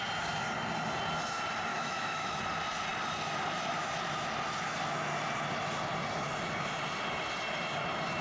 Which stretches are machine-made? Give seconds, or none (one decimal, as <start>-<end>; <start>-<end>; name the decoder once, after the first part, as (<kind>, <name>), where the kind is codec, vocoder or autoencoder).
1.7-2.4 (autoencoder, DAC-VAE)